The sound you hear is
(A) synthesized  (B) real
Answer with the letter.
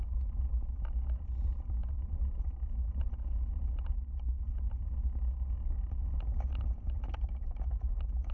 B